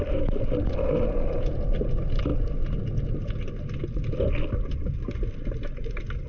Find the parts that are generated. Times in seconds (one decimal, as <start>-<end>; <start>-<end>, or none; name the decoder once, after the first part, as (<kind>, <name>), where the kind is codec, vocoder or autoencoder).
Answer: none